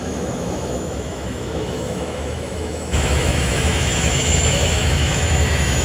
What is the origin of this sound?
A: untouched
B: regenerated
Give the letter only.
B